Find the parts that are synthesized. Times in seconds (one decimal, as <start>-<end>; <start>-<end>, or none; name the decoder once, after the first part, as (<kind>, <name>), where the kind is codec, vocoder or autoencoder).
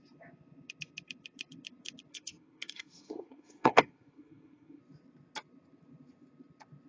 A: 2.1-4.8 (codec, SNAC)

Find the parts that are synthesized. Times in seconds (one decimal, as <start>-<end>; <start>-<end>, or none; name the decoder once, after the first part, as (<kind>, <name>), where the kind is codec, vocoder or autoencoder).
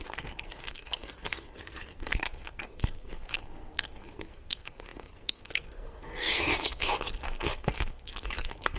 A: 0.0-8.8 (codec, SNAC)